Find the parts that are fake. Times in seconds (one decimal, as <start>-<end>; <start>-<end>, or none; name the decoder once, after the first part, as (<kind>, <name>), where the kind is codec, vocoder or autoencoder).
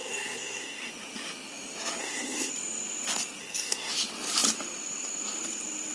0.0-0.9 (codec, SNAC); 2.0-2.5; 3.4-3.9